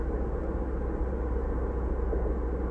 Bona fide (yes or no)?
yes